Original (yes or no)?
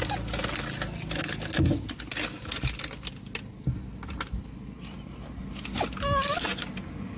yes